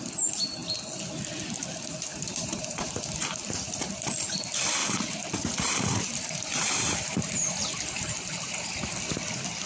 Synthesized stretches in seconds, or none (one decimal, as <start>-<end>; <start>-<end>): 2.1-3.0; 4.8-9.0